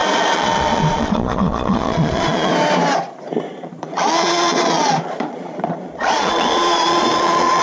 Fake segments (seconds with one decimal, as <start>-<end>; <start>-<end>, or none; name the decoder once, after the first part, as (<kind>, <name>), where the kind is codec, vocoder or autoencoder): 0.0-2.5 (vocoder, Vocos); 3.5-7.6